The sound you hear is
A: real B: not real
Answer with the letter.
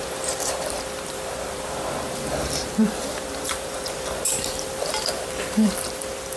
B